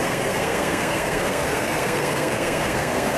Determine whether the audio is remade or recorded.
remade